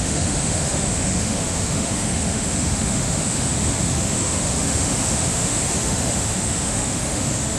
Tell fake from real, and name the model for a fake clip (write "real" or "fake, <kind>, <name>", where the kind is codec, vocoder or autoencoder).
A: fake, autoencoder, DAC-VAE